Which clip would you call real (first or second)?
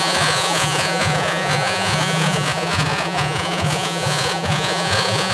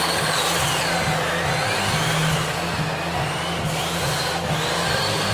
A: second